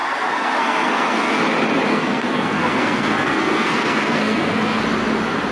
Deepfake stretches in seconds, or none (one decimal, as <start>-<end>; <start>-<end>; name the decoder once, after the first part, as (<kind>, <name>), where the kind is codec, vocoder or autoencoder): 0.0-1.4 (codec, SNAC); 1.9-4.8